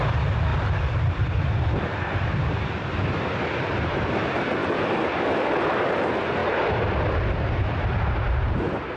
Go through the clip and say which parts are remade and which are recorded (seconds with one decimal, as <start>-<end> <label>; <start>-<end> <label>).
0.0-0.5 recorded; 0.5-3.4 remade; 3.4-4.6 recorded; 4.6-5.9 remade; 5.9-6.4 recorded; 6.4-8.0 remade; 8.0-9.0 recorded